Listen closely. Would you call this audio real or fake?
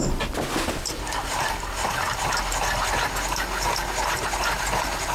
real